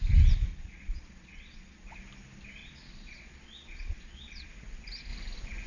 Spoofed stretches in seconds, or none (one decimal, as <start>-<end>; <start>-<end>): 0.5-1.9; 2.6-4.5